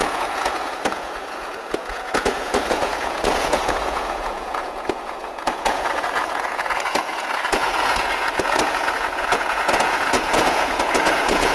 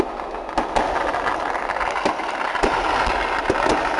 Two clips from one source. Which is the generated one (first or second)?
first